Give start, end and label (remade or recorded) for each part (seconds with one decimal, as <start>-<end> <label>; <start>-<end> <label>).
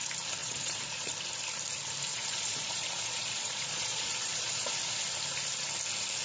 0.0-0.4 recorded; 0.4-1.1 remade; 1.1-2.1 recorded; 2.1-4.7 remade; 4.7-6.2 recorded